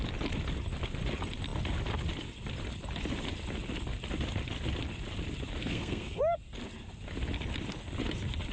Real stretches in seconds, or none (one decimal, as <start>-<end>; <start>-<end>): 0.0-5.6; 6.2-8.5